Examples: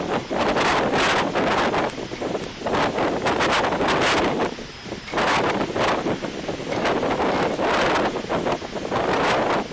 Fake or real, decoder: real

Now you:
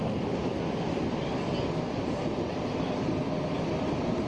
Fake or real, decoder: real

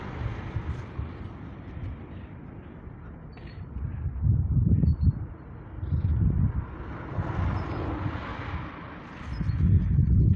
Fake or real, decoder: real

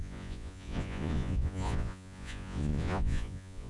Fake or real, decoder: fake, vocoder, Vocos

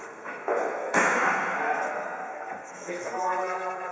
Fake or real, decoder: fake, codec, SNAC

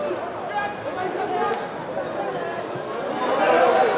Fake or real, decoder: real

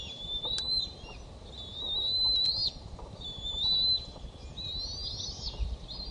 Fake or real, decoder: real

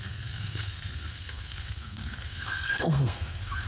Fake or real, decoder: fake, codec, SNAC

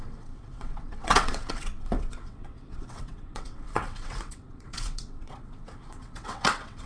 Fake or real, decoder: fake, vocoder, WaveNeXt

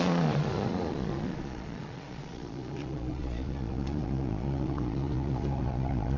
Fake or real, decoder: fake, vocoder, Vocos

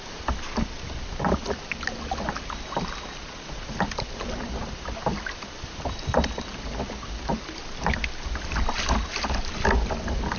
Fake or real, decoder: real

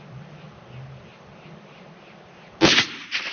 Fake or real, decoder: real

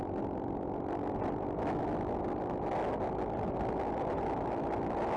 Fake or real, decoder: real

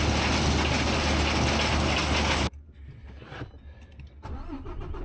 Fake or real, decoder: real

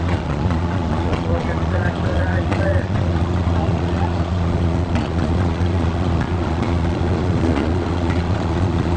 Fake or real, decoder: fake, vocoder, Vocos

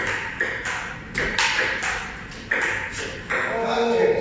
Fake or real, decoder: real